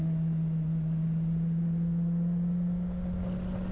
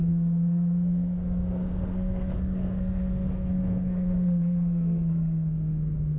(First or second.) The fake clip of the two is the second